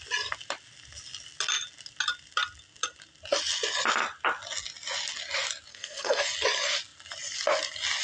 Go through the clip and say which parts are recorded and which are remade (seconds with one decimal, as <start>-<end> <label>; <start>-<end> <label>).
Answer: 0.0-5.7 recorded; 5.7-6.2 remade; 6.2-8.0 recorded